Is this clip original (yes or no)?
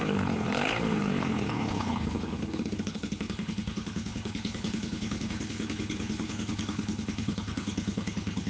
no